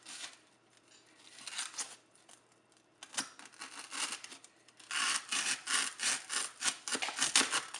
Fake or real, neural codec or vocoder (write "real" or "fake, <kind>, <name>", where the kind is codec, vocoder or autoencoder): real